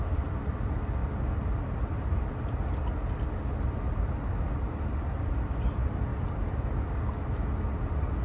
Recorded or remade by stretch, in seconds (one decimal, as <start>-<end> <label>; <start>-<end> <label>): 0.0-8.2 recorded